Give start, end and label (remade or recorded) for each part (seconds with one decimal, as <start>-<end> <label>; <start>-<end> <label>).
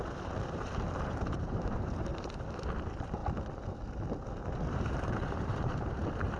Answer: 0.0-2.1 remade; 2.1-2.7 recorded; 2.7-3.2 remade; 3.2-4.7 recorded; 4.7-6.4 remade